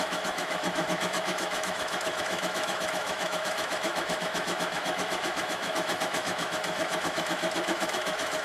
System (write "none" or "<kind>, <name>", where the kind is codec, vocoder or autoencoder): autoencoder, DAC-VAE